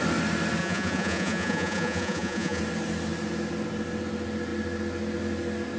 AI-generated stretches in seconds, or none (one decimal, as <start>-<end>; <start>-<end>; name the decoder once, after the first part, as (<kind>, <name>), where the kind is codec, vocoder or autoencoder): 0.6-2.6 (vocoder, Vocos)